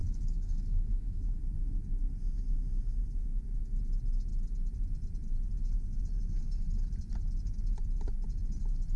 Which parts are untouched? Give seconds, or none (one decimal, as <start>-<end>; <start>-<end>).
1.4-9.0